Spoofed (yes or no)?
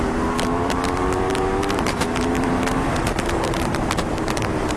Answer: yes